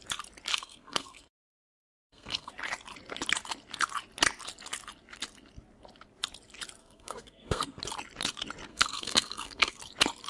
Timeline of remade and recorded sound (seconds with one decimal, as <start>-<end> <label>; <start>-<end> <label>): 0.0-0.5 recorded; 0.5-2.5 remade; 2.5-6.8 recorded; 6.8-7.8 remade; 7.8-8.7 recorded; 8.7-9.8 remade; 9.8-10.3 recorded